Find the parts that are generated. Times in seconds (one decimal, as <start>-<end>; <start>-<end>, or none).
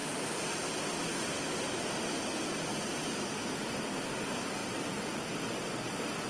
none